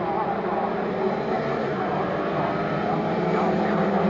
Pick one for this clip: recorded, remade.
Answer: remade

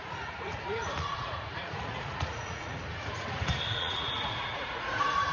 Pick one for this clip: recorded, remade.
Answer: remade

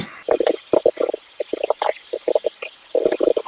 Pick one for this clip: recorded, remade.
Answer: recorded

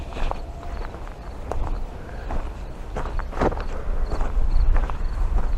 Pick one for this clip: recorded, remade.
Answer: remade